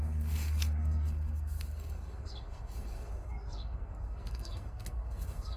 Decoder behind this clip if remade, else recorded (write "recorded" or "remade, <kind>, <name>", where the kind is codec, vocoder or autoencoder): remade, codec, SNAC